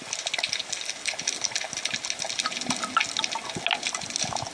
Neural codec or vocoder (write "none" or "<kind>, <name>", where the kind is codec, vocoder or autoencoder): none